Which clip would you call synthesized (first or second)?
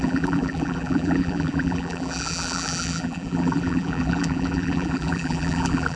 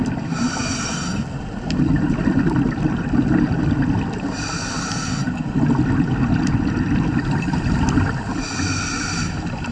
first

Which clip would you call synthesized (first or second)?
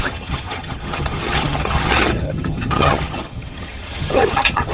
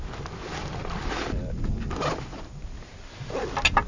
first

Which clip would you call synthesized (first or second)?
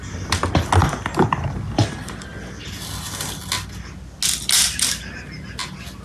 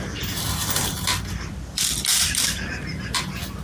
second